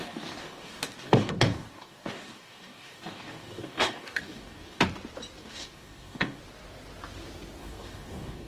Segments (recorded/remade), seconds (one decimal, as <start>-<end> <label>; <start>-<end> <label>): 0.0-4.8 remade; 4.8-5.4 recorded; 5.4-6.4 remade; 6.4-7.6 recorded; 7.6-8.5 remade